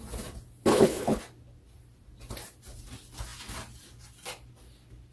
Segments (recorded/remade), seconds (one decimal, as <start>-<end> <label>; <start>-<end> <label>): 0.0-0.7 recorded; 0.7-1.2 remade; 1.2-5.1 recorded